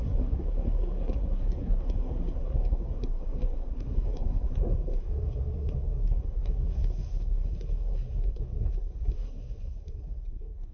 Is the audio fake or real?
fake